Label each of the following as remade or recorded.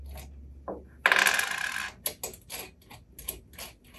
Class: recorded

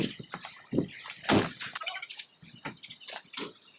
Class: recorded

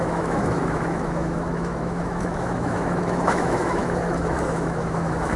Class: remade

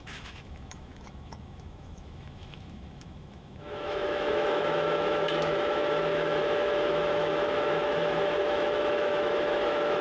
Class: remade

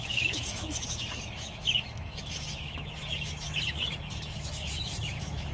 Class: remade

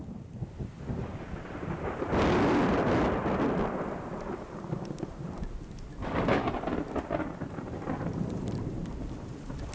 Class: recorded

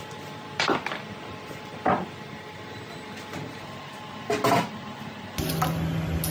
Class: recorded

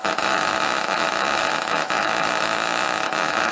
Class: remade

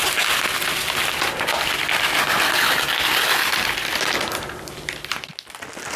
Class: recorded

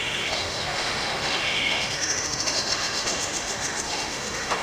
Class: remade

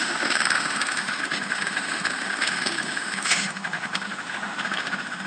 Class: remade